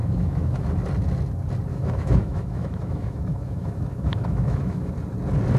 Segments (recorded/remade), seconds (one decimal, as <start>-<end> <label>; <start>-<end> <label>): 0.0-0.7 remade; 0.7-1.7 recorded; 1.7-4.9 remade; 4.9-5.6 recorded